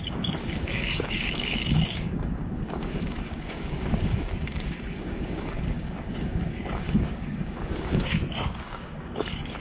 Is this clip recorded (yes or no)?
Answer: no